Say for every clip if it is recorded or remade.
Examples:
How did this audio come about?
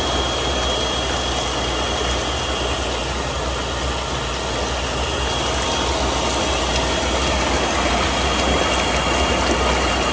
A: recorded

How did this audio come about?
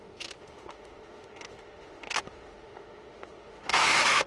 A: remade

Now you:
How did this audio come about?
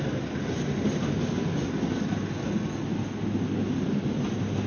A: recorded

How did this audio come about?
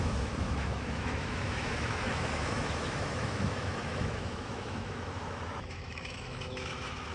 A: remade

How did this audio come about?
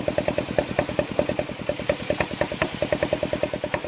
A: recorded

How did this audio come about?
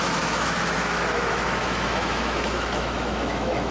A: remade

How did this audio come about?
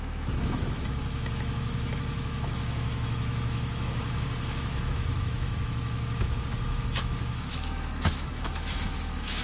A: remade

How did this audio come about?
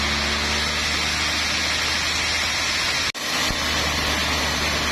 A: recorded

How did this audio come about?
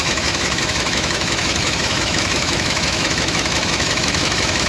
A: remade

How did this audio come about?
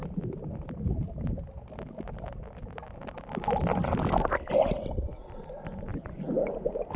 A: recorded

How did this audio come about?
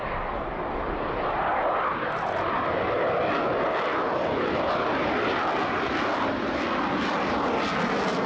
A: recorded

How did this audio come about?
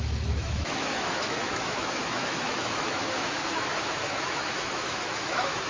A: remade